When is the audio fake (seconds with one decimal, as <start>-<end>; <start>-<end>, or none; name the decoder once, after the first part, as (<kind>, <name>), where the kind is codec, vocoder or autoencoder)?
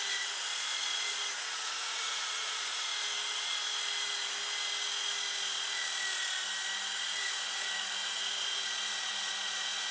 0.0-2.9 (vocoder, Vocos); 7.1-9.9